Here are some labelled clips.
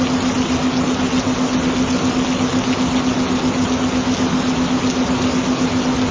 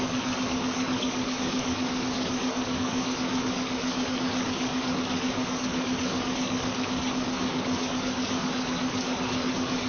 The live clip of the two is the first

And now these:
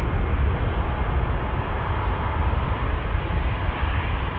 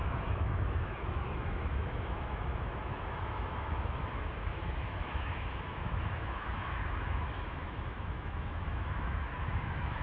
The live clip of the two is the first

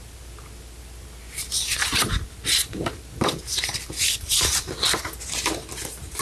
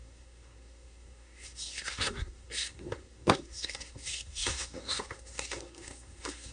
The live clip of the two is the first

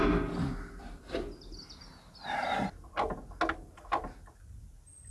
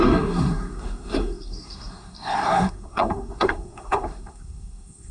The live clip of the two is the first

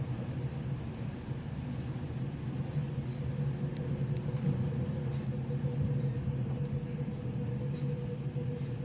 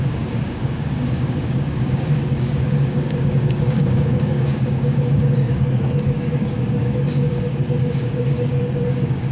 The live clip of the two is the first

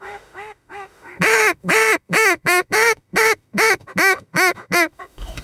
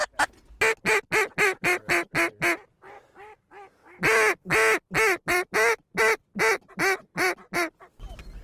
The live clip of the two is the second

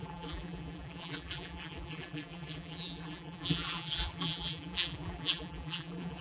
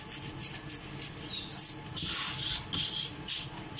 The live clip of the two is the second